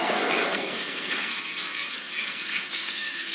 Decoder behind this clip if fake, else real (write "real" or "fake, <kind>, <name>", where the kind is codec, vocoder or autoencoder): fake, codec, SNAC